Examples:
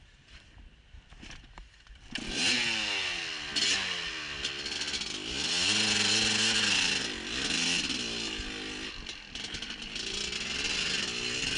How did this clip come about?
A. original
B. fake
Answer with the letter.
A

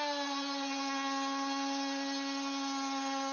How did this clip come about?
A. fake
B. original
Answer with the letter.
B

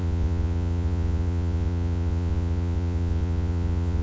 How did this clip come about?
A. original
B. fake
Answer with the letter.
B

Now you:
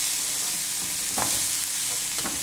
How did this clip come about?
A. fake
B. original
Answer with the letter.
B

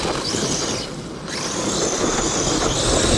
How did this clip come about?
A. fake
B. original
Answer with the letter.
B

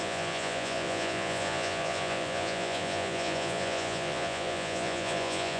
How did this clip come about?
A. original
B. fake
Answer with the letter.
B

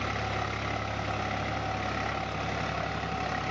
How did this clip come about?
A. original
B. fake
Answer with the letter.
A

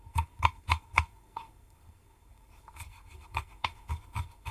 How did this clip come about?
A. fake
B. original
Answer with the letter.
A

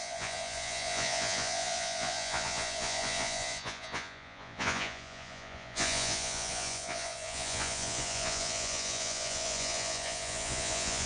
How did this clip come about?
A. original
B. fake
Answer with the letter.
B